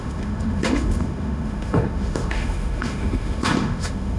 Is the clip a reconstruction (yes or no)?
yes